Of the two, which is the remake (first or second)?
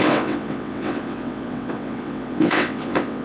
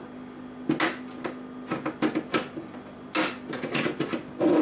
first